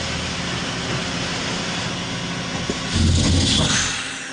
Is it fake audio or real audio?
real